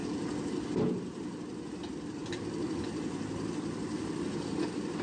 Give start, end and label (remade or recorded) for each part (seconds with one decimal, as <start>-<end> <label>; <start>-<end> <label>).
0.0-5.0 recorded